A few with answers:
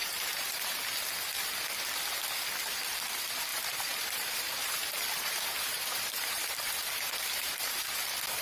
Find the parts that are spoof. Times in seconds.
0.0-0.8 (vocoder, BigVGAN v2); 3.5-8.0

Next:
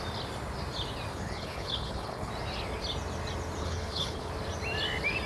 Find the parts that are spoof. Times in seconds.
1.1-2.3 (codec, HILCodec); 3.6-4.3

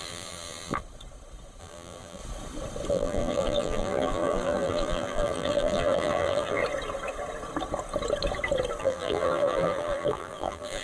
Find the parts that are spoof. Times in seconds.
0.0-0.8 (vocoder, BigVGAN v2); 1.6-2.2; 2.9-6.6; 8.8-10.8

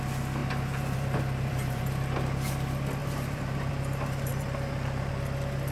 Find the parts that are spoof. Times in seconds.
0.4-1.8 (vocoder, BigVGAN v2); 3.0-3.7; 4.3-5.1

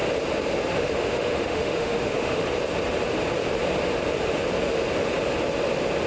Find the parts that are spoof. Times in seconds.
0.8-2.4 (autoencoder, DAC-VAE)

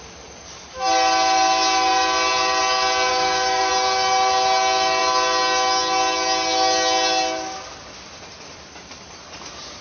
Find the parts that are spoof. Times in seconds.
3.1-3.7 (codec, DAC)

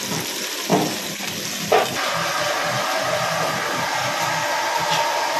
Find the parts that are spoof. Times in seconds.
none

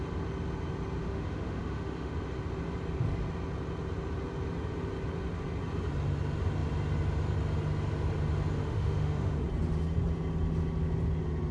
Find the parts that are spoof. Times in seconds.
1.0-2.1 (autoencoder, DAC-VAE); 8.6-9.4